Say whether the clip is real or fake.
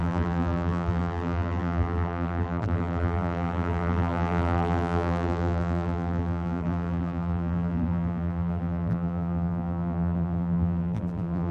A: fake